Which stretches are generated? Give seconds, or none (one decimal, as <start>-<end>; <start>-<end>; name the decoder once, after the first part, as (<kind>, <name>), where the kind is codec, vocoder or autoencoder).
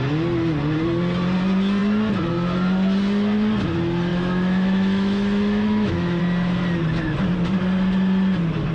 4.1-6.2 (autoencoder, DAC-VAE)